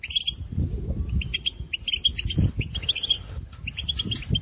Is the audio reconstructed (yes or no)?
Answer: no